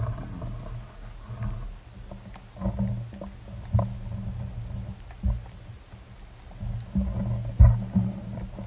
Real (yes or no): yes